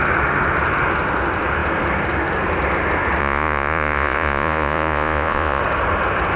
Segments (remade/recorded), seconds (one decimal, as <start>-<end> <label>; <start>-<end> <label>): 0.0-3.2 recorded; 3.2-5.6 remade; 5.6-6.4 recorded